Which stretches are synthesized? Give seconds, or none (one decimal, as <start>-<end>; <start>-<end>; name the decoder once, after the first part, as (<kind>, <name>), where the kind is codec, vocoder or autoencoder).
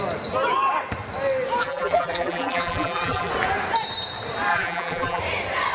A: 1.6-3.3 (vocoder, BigVGAN v2); 4.5-5.2